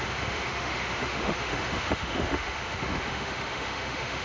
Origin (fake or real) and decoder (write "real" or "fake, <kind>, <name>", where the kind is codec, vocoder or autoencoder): fake, autoencoder, DAC-VAE